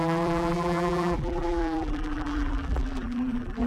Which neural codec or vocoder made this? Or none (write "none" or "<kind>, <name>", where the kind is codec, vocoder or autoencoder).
vocoder, BigVGAN v2